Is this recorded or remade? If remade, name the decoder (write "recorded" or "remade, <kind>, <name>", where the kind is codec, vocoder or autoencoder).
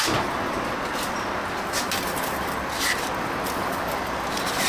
recorded